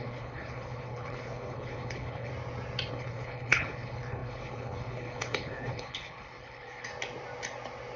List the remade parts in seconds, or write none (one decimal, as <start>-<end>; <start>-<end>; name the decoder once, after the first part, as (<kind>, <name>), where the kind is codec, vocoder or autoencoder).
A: 0.0-2.3 (codec, HILCodec); 2.9-6.9